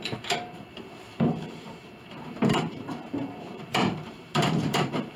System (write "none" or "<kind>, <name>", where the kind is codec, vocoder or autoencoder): vocoder, BigVGAN v2